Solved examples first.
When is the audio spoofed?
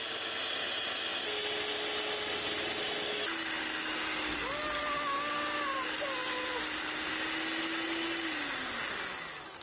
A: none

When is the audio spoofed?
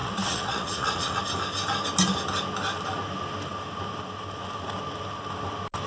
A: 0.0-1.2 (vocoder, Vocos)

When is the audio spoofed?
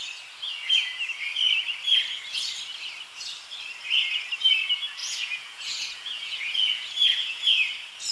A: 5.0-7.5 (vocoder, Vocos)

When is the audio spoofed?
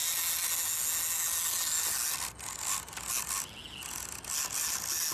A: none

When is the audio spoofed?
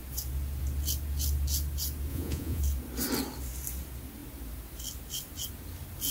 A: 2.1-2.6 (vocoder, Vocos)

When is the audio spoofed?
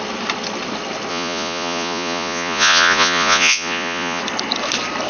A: 1.1-4.2 (vocoder, Vocos)